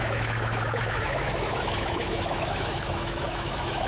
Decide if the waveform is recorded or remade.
remade